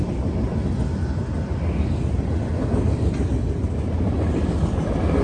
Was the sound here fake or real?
real